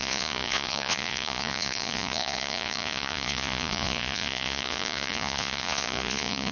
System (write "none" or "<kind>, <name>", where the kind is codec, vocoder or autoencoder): vocoder, Vocos